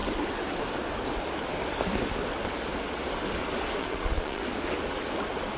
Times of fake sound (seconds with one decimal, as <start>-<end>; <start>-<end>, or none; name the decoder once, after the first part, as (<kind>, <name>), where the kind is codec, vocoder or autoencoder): 3.8-4.4 (vocoder, Vocos)